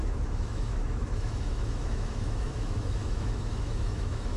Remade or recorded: remade